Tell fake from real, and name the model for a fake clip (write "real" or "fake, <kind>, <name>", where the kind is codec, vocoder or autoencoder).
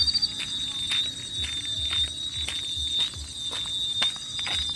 real